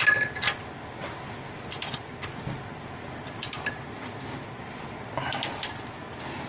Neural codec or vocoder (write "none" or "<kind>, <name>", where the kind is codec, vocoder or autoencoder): none